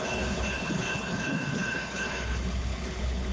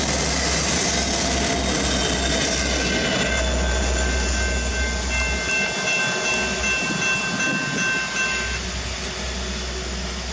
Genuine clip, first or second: second